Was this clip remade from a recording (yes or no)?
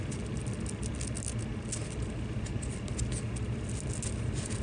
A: no